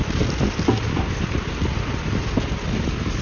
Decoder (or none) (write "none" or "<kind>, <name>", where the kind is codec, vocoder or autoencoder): none